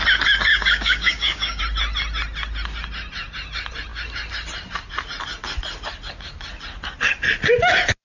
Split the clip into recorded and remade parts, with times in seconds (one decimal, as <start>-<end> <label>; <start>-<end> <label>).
0.0-0.5 recorded; 0.5-1.6 remade; 1.6-8.0 recorded